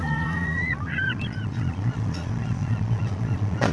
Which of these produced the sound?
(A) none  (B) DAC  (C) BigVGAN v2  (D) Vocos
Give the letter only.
D